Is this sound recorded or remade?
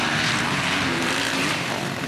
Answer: remade